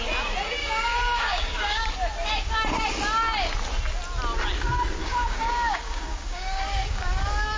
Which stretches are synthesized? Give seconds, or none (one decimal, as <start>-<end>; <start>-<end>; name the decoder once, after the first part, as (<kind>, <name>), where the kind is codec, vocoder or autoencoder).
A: 0.6-1.9 (codec, DAC); 5.0-7.6